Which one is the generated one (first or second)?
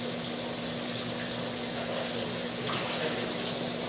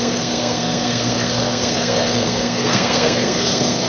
second